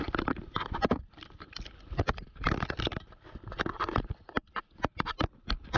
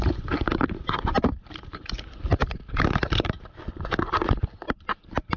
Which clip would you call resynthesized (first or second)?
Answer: second